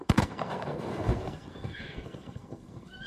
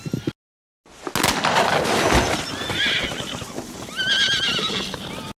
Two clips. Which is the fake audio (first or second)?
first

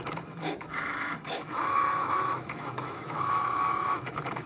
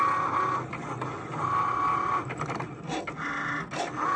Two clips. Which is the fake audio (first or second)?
first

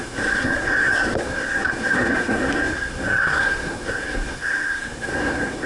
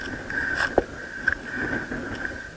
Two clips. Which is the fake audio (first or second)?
first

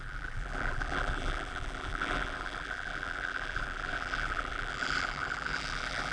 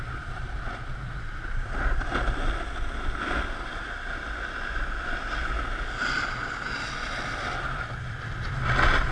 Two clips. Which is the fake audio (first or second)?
first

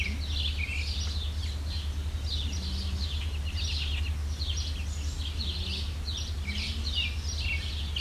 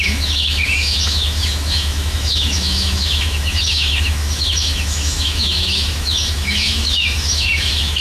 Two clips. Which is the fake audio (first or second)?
second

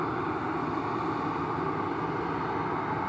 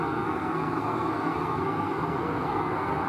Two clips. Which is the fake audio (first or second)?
second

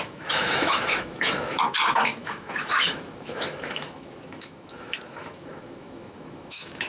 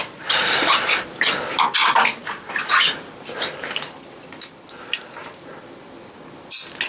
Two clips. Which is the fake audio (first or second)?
first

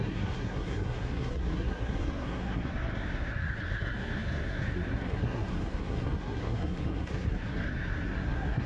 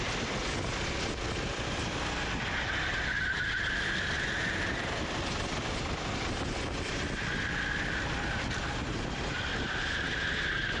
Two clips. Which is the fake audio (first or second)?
first